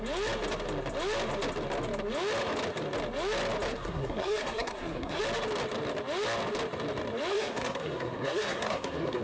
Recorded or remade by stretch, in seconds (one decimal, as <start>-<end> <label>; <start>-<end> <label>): 0.0-3.7 recorded; 3.7-5.2 remade; 5.2-7.3 recorded; 7.3-9.2 remade